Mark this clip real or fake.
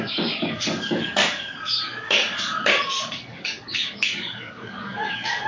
fake